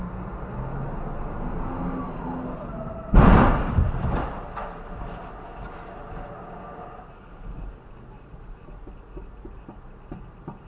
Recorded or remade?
recorded